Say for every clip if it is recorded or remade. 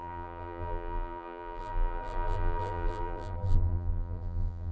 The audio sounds remade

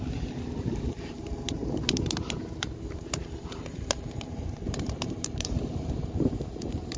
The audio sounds remade